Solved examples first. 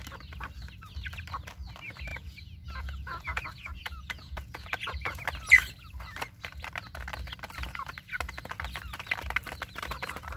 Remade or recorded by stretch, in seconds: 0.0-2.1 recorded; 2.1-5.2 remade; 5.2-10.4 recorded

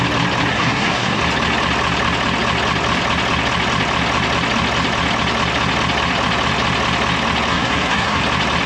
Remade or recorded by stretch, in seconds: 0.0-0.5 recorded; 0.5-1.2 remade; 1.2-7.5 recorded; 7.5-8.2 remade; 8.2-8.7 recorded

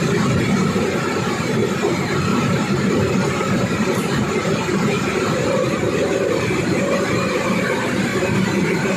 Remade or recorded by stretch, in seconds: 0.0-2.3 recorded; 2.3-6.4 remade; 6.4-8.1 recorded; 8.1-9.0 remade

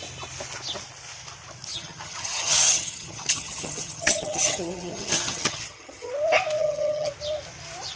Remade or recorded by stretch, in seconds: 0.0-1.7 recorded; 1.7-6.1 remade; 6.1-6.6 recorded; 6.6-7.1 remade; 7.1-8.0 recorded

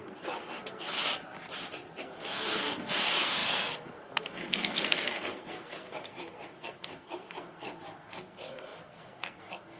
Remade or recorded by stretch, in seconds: 0.0-1.0 remade; 1.0-2.0 recorded; 2.0-9.8 remade

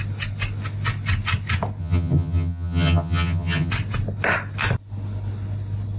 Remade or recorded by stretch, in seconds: 0.0-1.8 recorded; 1.8-3.7 remade; 3.7-6.0 recorded